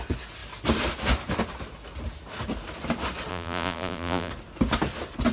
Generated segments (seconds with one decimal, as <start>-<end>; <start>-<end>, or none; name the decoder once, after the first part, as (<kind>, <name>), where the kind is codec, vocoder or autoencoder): 3.3-4.3 (vocoder, BigVGAN v2)